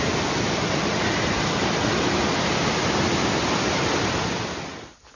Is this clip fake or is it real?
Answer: real